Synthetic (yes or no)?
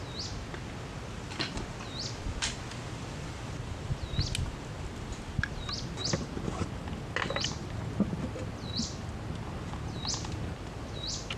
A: no